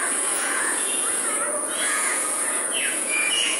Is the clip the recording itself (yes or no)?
no